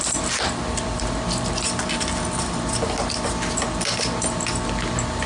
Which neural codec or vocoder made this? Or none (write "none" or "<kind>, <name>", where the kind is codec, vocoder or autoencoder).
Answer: none